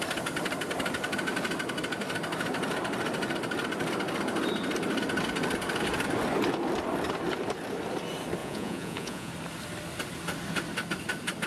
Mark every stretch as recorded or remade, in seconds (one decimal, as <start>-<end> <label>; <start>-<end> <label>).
0.0-8.4 recorded; 8.4-9.3 remade; 9.3-11.5 recorded